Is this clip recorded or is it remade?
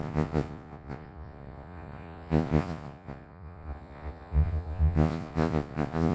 remade